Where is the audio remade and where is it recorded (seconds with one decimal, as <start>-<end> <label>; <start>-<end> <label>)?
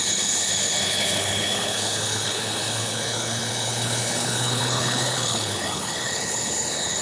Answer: 0.0-7.0 remade